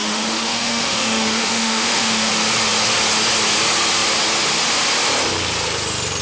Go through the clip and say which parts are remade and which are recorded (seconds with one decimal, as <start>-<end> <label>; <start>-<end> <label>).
0.0-2.3 remade; 2.3-6.2 recorded